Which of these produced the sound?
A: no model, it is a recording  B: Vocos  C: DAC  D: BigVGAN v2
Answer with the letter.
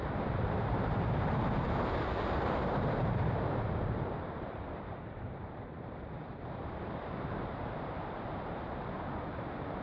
D